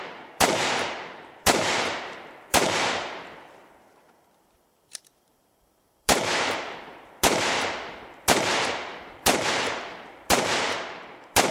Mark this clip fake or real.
fake